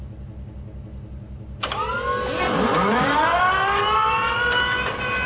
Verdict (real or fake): real